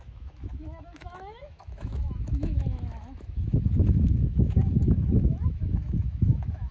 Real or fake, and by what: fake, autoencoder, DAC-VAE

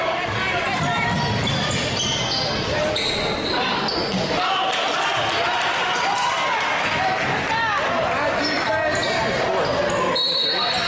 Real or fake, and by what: real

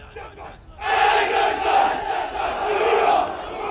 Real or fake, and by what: real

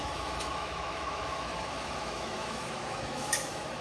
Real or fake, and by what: fake, autoencoder, DAC-VAE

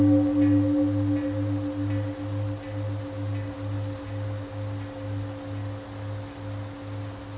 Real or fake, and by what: real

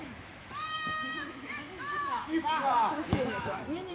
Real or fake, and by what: fake, autoencoder, DAC-VAE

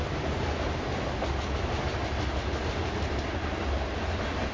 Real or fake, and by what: real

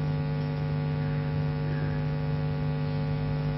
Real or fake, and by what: real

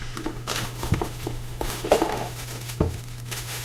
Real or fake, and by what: fake, autoencoder, DAC-VAE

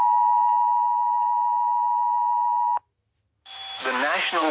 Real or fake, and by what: fake, autoencoder, DAC-VAE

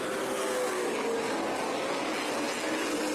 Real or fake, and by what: real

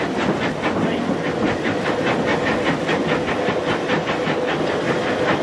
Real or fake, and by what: real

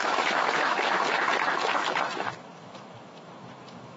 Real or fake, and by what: fake, autoencoder, DAC-VAE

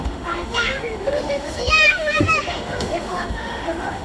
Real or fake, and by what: fake, autoencoder, DAC-VAE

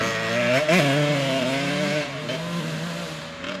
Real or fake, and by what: real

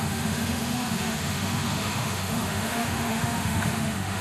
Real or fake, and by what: fake, autoencoder, DAC-VAE